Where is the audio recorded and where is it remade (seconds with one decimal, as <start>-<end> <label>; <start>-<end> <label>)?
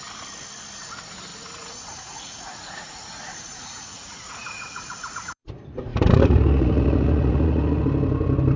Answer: 0.0-1.3 recorded; 1.3-5.5 remade; 5.5-5.9 recorded; 5.9-7.8 remade; 7.8-8.6 recorded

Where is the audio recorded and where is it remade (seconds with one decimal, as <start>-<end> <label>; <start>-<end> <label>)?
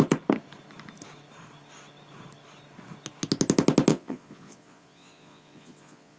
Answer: 0.0-3.9 recorded; 3.9-6.2 remade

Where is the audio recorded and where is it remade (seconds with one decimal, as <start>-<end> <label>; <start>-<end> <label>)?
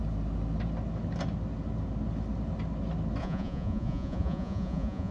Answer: 0.0-3.2 recorded; 3.2-5.1 remade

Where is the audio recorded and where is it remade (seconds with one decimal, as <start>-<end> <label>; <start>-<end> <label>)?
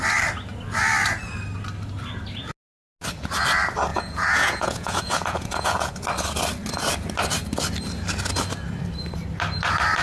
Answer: 0.0-3.9 recorded; 3.9-5.9 remade; 5.9-10.0 recorded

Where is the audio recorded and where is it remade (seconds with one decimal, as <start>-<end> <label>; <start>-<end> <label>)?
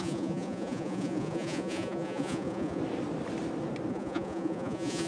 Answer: 0.0-2.8 remade; 2.8-3.9 recorded; 3.9-5.1 remade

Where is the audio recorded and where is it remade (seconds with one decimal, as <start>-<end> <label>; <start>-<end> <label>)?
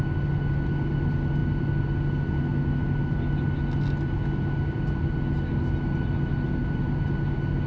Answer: 0.0-7.7 recorded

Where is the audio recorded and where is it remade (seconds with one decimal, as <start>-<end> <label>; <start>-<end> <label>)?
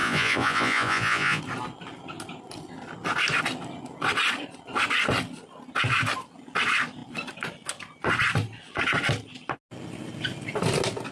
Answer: 0.0-1.4 remade; 1.4-11.1 recorded